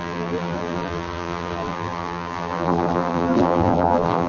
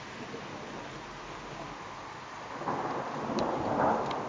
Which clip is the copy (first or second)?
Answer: first